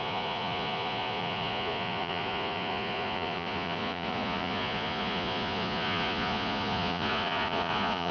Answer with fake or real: fake